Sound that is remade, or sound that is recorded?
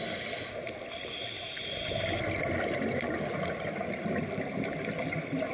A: recorded